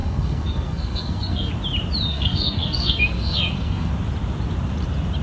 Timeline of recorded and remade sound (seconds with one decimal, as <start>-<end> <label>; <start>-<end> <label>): 0.0-1.5 remade; 1.5-2.1 recorded; 2.1-3.9 remade; 3.9-5.2 recorded

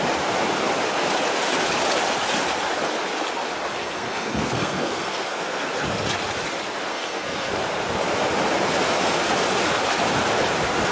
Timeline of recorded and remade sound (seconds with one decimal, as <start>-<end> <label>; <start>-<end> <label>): 0.0-3.8 recorded; 3.8-5.7 remade; 5.7-6.9 recorded; 6.9-7.5 remade; 7.5-10.9 recorded

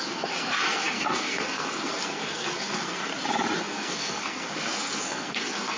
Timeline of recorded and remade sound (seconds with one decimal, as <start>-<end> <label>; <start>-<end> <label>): 0.0-3.1 remade; 3.1-3.6 recorded; 3.6-5.8 remade

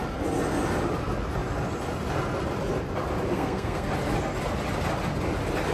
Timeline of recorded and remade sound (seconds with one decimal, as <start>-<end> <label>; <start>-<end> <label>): 0.0-3.3 recorded; 3.3-3.9 remade; 3.9-5.7 recorded